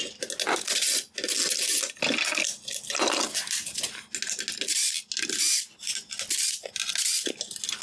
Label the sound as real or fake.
real